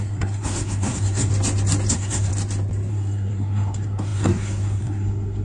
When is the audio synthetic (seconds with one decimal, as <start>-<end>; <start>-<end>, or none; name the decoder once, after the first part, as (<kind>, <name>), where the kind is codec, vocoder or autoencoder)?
0.0-1.3 (codec, SNAC); 1.9-2.3; 2.9-5.4